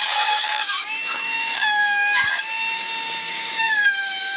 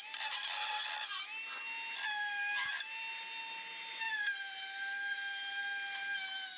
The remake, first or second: first